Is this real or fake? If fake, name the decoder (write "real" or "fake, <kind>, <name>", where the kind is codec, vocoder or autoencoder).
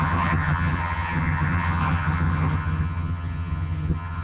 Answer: fake, vocoder, HiFi-GAN